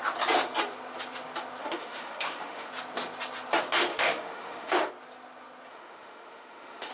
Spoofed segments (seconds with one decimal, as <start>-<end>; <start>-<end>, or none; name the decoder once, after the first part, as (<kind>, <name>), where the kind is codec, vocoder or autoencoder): 1.6-2.7 (autoencoder, DAC-VAE); 3.9-4.9; 5.7-6.9